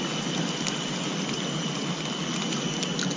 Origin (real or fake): real